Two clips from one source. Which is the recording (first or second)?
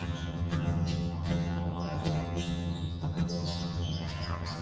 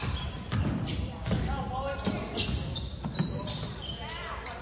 second